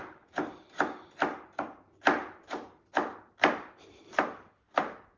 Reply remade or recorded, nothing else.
recorded